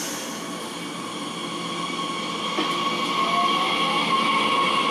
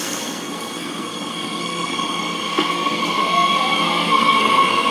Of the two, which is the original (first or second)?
first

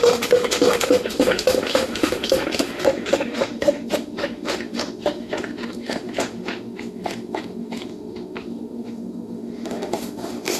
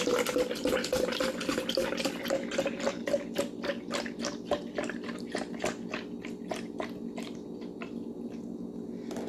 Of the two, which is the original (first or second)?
second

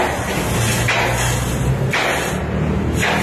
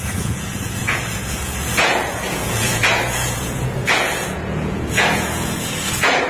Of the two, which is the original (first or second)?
first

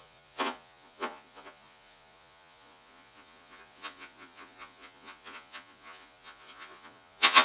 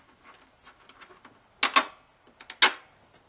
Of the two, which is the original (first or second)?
second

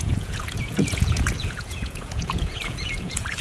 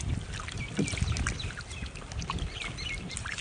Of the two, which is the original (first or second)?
second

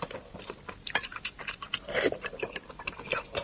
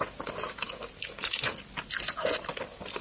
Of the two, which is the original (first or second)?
second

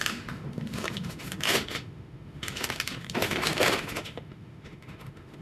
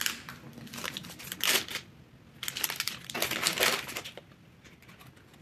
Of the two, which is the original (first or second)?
second